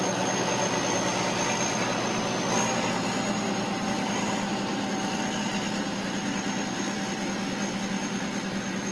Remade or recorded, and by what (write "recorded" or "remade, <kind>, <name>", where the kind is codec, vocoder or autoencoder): recorded